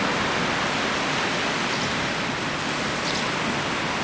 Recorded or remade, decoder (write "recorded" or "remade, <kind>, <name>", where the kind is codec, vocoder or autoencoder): recorded